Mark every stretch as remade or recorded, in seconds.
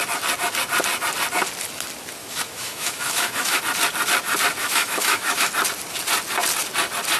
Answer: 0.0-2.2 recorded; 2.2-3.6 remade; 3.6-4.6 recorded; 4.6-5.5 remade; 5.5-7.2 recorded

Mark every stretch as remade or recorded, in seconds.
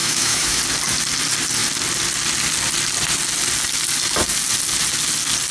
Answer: 0.0-0.6 remade; 0.6-5.5 recorded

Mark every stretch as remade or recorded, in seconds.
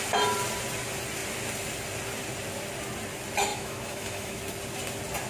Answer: 0.0-3.5 recorded; 3.5-4.4 remade; 4.4-5.3 recorded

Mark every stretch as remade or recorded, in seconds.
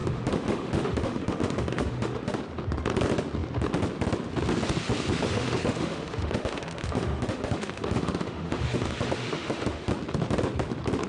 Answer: 0.0-2.4 remade; 2.4-5.1 recorded; 5.1-9.9 remade; 9.9-11.1 recorded